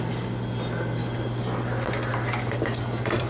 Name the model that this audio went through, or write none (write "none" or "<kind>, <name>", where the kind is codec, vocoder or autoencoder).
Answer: none